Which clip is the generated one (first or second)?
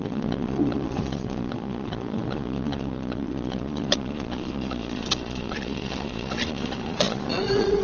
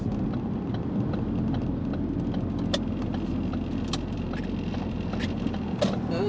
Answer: first